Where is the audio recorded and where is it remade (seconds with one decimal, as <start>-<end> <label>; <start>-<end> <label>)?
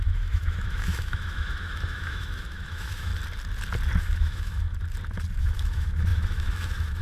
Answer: 0.0-3.1 remade; 3.1-4.0 recorded; 4.0-4.7 remade; 4.7-5.4 recorded; 5.4-7.0 remade